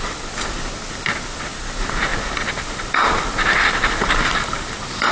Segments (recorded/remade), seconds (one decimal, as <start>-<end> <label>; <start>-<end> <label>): 0.0-5.1 recorded